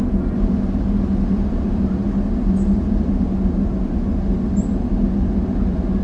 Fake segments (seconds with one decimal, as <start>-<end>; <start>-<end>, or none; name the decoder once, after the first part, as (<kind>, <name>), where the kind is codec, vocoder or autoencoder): none